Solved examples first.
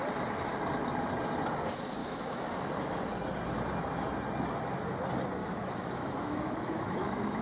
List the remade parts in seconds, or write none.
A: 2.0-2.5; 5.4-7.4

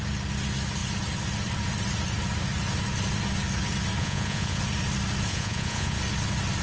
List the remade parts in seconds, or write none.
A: 4.0-4.6; 5.3-6.0

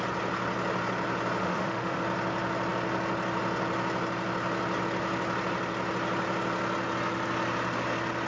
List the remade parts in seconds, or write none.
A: 1.4-2.0